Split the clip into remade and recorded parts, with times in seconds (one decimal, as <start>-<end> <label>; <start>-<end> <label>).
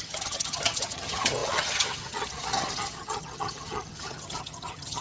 0.0-5.0 remade